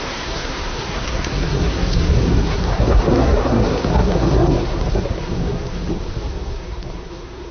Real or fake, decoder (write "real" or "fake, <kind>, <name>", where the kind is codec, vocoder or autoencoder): fake, codec, SNAC